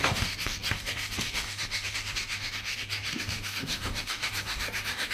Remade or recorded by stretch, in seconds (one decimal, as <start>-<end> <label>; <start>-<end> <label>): 0.0-5.1 remade